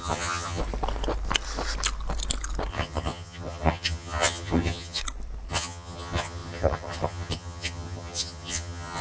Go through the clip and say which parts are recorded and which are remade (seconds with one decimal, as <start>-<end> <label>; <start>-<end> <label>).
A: 0.0-0.6 remade; 0.6-2.7 recorded; 2.7-5.0 remade; 5.0-5.5 recorded; 5.5-9.0 remade

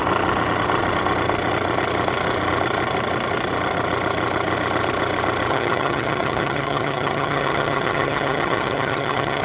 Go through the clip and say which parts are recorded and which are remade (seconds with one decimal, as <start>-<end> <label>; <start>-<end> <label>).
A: 0.0-5.5 recorded; 5.5-9.4 remade

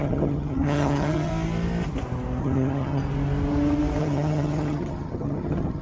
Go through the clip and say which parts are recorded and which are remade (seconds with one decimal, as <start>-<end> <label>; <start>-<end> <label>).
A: 0.0-1.3 remade; 1.3-2.4 recorded; 2.4-3.0 remade; 3.0-4.0 recorded; 4.0-5.8 remade

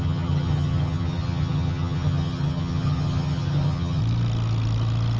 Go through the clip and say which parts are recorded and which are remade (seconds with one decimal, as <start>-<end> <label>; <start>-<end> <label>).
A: 0.0-4.0 remade; 4.0-5.2 recorded

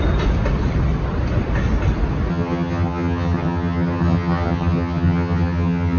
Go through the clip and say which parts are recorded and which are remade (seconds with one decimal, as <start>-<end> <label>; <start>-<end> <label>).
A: 0.0-2.3 recorded; 2.3-6.0 remade

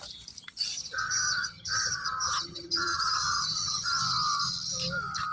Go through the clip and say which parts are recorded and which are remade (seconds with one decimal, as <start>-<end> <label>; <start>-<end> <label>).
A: 0.0-0.8 recorded; 0.8-4.0 remade; 4.0-5.3 recorded

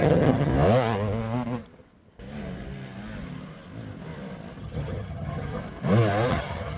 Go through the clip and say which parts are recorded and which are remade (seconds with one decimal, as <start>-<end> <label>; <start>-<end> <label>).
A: 0.0-0.5 remade; 0.5-4.6 recorded; 4.6-5.6 remade; 5.6-6.3 recorded; 6.3-6.8 remade